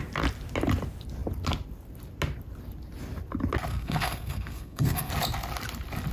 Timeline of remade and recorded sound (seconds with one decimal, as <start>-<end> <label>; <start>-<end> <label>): 0.0-3.7 recorded; 3.7-5.1 remade; 5.1-6.1 recorded